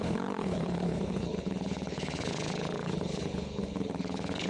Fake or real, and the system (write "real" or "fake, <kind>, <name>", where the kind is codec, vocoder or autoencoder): fake, codec, HILCodec